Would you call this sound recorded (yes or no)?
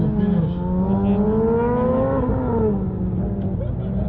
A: yes